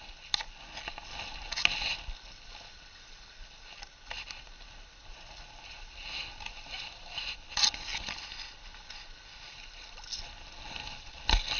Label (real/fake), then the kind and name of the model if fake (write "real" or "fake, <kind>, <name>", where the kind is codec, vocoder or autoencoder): real